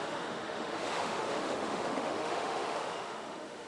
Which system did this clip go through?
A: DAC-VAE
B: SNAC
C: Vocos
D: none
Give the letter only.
A